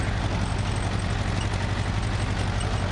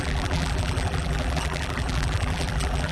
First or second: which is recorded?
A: first